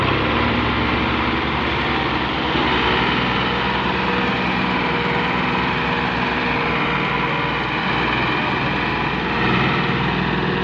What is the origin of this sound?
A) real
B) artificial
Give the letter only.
A